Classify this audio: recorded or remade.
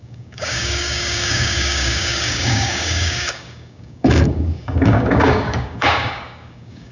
remade